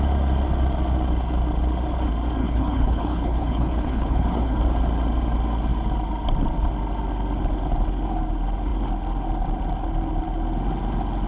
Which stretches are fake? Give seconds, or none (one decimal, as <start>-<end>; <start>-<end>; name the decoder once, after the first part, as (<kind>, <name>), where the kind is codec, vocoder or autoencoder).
2.4-4.6 (codec, HILCodec)